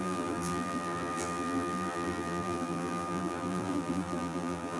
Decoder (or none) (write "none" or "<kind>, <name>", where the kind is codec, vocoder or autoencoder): vocoder, BigVGAN v2